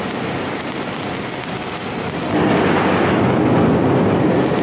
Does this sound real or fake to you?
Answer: real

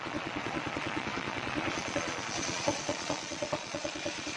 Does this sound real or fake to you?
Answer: fake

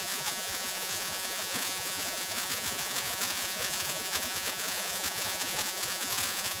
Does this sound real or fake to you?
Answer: fake